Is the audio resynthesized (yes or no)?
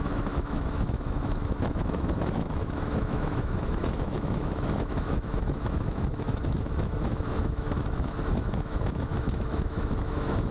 yes